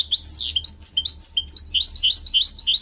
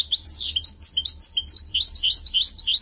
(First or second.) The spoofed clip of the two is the second